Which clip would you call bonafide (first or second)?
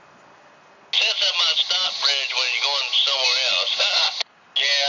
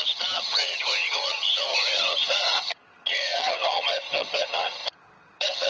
first